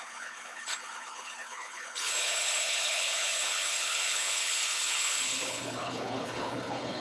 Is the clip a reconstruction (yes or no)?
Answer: yes